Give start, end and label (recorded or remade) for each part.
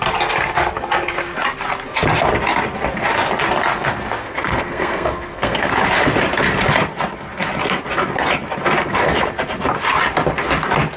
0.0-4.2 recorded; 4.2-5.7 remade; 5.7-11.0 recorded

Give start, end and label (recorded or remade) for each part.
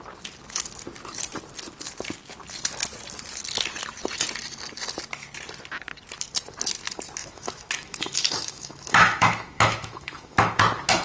0.0-7.2 recorded; 7.2-10.6 remade; 10.6-11.0 recorded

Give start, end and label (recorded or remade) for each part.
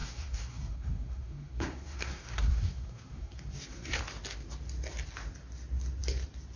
0.0-4.0 remade; 4.0-6.6 recorded